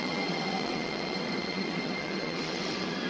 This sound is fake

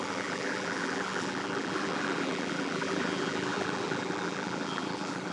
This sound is fake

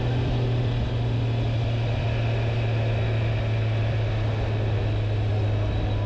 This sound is real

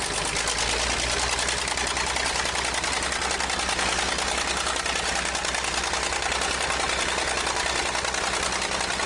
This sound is real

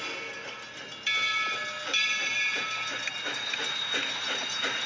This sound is real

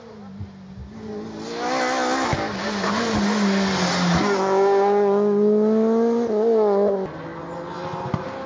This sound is real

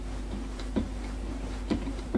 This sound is fake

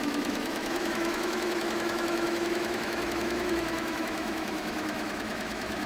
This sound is fake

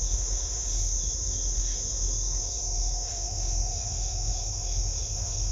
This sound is fake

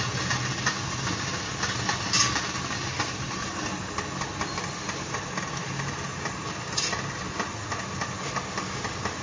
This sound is real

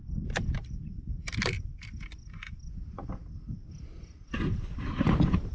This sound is real